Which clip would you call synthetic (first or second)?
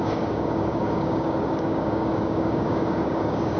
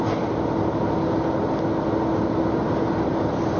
first